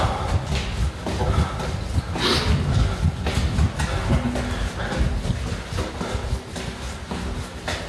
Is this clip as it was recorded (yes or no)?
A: yes